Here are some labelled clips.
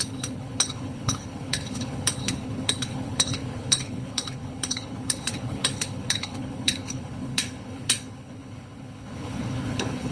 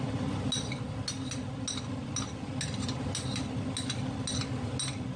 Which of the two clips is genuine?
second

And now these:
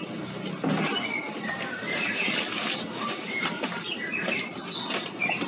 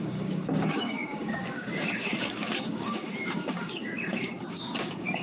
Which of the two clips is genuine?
first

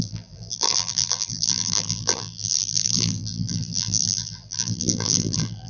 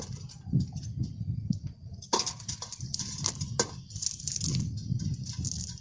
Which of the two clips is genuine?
second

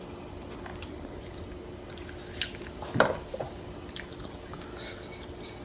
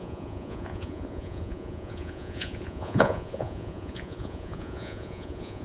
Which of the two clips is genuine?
first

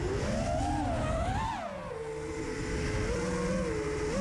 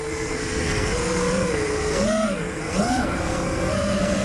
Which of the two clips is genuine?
first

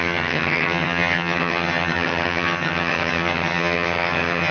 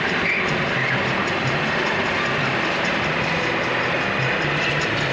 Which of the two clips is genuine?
second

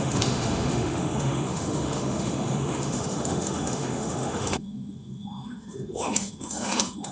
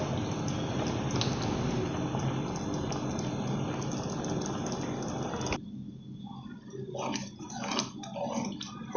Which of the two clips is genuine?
second